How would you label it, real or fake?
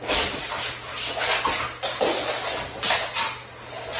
real